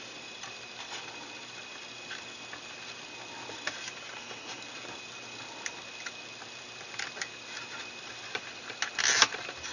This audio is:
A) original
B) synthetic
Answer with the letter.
A